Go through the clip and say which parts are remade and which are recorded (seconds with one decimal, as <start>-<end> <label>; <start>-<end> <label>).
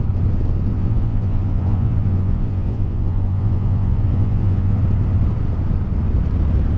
0.0-0.7 recorded; 0.7-4.8 remade; 4.8-6.8 recorded